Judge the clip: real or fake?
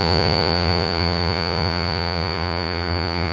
fake